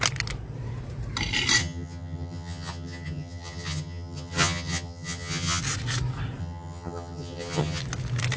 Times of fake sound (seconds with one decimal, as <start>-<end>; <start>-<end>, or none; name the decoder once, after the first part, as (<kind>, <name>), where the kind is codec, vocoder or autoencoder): 1.6-5.6 (vocoder, HiFi-GAN); 6.4-7.8